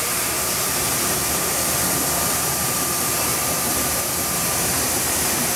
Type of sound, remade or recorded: remade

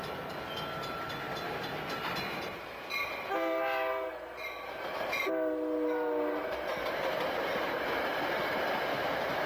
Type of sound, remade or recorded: recorded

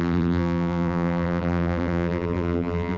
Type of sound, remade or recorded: remade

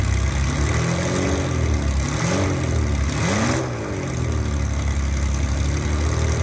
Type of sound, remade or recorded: recorded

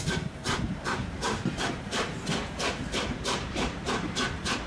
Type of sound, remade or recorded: remade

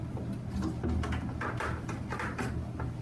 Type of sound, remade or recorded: recorded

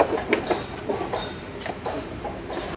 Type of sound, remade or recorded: remade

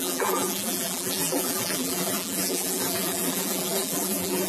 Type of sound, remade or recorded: remade